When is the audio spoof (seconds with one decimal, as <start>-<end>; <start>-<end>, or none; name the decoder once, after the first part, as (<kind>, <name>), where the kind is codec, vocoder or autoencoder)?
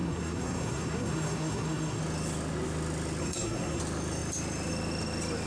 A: 0.0-2.0 (codec, SNAC); 3.2-3.8